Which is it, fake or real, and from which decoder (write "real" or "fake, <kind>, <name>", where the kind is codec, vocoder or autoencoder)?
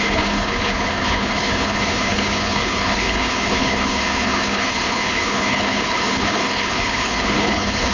fake, codec, HILCodec